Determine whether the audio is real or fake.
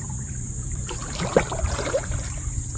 fake